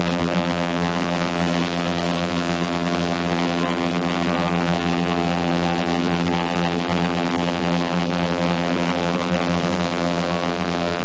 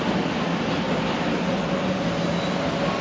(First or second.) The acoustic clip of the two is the second